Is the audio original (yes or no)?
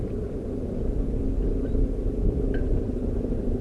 yes